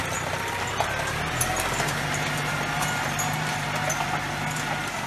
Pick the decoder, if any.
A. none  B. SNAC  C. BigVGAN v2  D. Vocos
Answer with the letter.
A